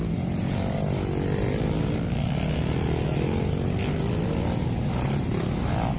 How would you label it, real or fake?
real